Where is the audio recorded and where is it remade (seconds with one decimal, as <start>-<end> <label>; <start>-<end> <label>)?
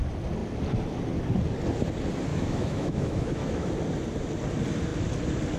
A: 0.0-2.3 recorded; 2.3-3.7 remade; 3.7-5.6 recorded